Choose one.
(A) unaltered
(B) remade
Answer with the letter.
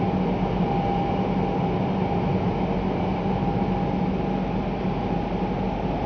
A